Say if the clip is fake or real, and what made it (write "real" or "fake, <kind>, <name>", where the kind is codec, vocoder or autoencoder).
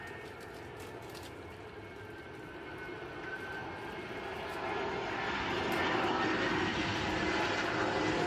real